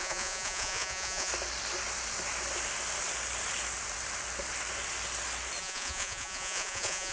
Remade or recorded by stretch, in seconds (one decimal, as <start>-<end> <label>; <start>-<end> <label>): 0.0-1.3 remade; 1.3-5.6 recorded; 5.6-7.1 remade